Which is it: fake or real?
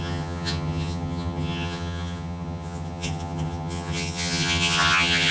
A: fake